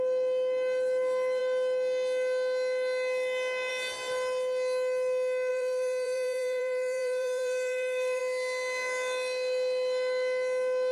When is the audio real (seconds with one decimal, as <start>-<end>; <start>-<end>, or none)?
0.0-5.5; 8.2-10.9